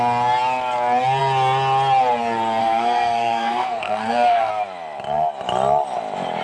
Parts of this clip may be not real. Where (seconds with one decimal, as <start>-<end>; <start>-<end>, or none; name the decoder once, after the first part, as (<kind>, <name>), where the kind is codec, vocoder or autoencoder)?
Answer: 2.6-4.5 (codec, SNAC)